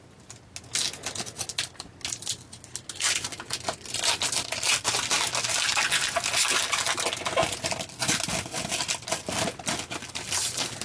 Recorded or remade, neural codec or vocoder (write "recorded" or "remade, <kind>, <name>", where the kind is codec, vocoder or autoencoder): recorded